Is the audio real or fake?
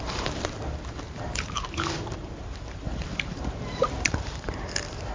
fake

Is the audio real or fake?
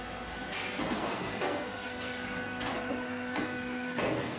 fake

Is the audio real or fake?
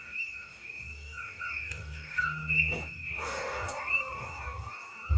fake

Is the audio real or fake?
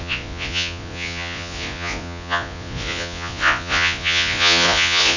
fake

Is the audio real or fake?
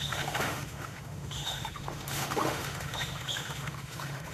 fake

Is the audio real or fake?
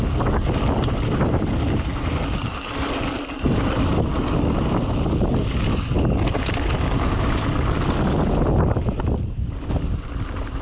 real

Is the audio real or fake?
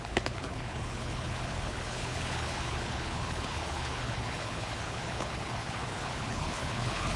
fake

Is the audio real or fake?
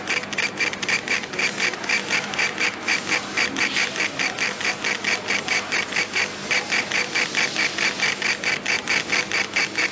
real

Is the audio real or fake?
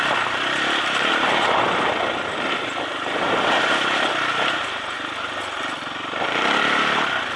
real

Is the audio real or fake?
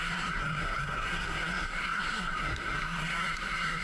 fake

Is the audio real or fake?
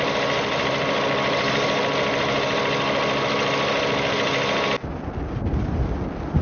real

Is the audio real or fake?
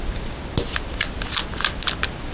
real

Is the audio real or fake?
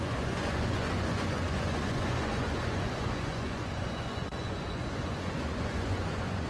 fake